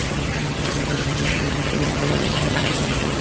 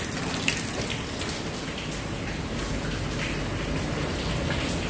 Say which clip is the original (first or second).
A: second